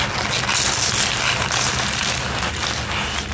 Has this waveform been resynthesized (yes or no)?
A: no